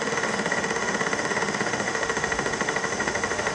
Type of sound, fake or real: fake